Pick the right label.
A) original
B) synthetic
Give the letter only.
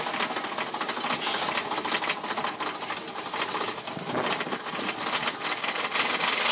A